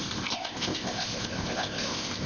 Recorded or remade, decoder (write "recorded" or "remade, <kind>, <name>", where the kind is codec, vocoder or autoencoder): remade, codec, ZipCodec